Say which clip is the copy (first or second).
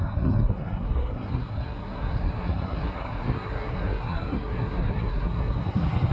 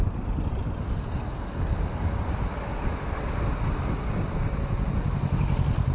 first